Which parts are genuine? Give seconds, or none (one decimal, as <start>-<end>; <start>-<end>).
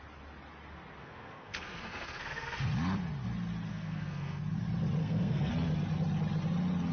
0.0-1.0; 2.7-3.7; 4.4-5.0; 5.5-6.9